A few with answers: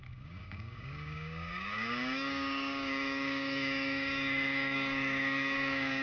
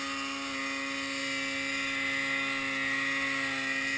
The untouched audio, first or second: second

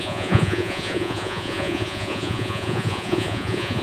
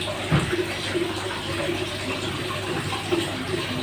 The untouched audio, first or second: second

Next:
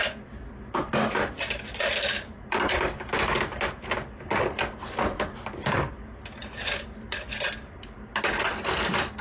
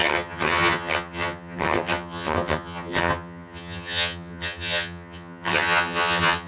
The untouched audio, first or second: first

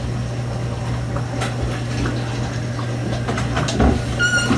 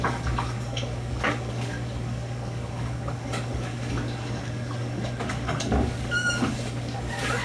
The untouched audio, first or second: first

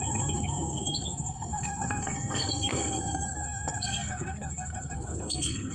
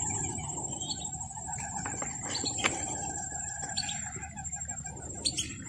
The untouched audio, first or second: second